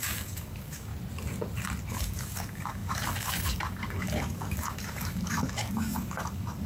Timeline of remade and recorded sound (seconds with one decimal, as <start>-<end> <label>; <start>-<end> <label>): 0.0-0.9 remade; 0.9-1.9 recorded; 1.9-6.7 remade